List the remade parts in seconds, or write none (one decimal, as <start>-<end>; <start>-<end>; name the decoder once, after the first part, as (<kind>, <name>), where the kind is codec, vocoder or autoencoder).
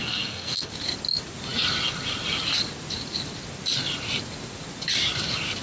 0.0-0.7 (codec, SNAC)